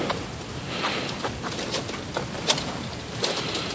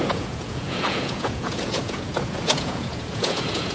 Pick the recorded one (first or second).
first